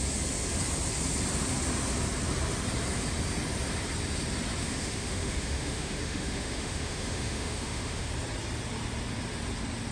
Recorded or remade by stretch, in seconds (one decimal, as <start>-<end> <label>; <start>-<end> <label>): 0.0-4.6 recorded; 4.6-8.1 remade; 8.1-9.9 recorded

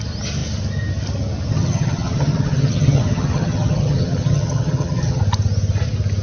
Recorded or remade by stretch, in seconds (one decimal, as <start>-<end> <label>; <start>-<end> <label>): 0.0-1.5 recorded; 1.5-5.2 remade; 5.2-6.2 recorded

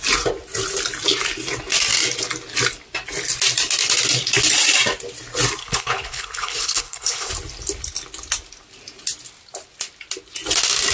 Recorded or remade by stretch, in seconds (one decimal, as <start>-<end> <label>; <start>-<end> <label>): 0.0-5.6 recorded; 5.6-7.3 remade; 7.3-10.9 recorded